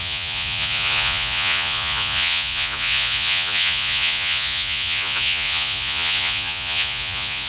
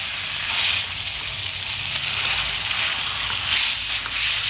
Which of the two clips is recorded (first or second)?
second